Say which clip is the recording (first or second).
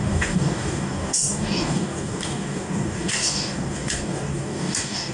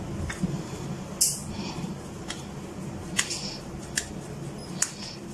second